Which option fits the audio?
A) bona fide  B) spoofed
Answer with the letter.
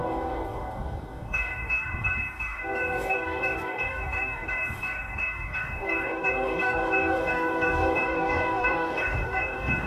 B